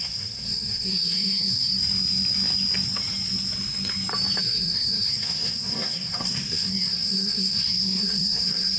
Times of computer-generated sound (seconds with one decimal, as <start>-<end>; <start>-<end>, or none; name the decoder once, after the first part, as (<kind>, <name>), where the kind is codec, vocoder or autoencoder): 0.0-1.7 (codec, SNAC); 4.4-8.8